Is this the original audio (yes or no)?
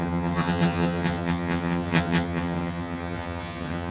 no